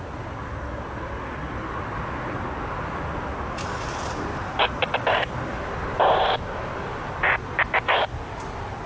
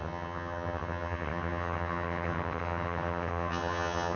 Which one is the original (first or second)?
first